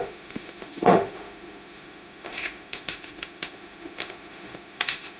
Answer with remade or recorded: remade